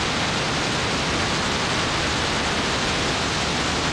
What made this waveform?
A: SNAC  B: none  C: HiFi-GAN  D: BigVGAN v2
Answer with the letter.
B